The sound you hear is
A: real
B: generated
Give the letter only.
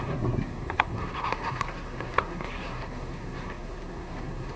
B